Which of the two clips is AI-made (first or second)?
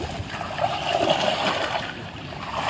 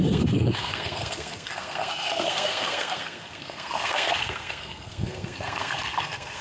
second